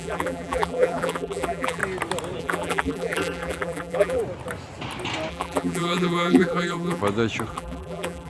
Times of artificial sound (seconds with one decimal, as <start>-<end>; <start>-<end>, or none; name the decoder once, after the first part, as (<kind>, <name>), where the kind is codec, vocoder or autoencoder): 0.0-1.8 (vocoder, BigVGAN v2); 2.4-4.2; 5.3-7.0; 7.5-8.3